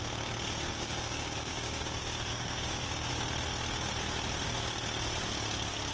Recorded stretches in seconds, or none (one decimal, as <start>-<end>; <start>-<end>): 0.0-0.7; 3.1-5.9